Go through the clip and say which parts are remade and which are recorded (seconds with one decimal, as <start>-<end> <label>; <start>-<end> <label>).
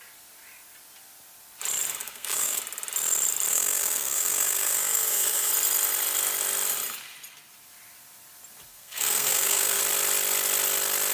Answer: 0.0-2.0 recorded; 2.0-2.6 remade; 2.6-3.5 recorded; 3.5-5.5 remade; 5.5-8.7 recorded; 8.7-9.8 remade; 9.8-11.1 recorded